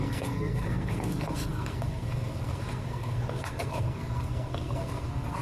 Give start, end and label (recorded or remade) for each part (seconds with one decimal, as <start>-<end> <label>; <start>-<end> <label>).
0.0-5.4 remade